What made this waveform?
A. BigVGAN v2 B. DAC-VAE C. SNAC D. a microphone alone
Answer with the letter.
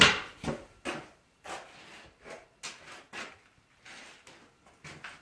D